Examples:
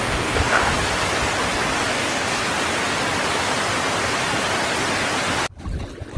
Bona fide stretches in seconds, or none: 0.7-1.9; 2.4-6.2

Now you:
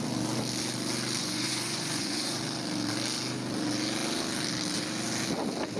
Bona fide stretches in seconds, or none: 0.0-1.2; 2.4-5.8

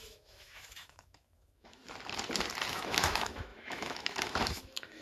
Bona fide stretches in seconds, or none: 1.8-2.7